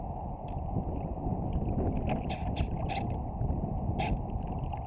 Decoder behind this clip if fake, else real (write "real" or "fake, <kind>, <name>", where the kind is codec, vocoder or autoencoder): real